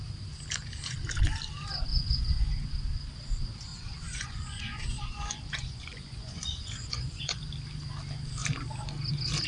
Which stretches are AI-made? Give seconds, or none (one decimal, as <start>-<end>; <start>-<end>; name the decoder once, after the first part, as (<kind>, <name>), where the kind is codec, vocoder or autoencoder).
1.9-2.5 (vocoder, Vocos); 3.7-7.4